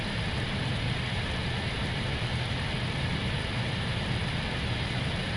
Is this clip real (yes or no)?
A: no